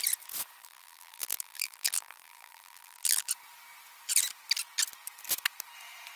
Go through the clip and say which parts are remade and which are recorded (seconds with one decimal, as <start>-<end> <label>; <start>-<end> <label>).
0.0-0.6 recorded; 0.6-3.3 remade; 3.3-6.2 recorded